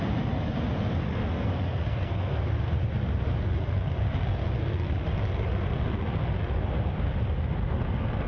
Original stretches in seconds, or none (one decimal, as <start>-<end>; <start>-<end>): 0.0-1.0; 2.4-8.3